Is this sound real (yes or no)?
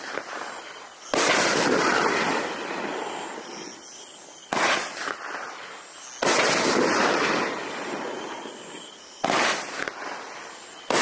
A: yes